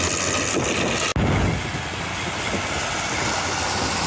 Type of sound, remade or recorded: recorded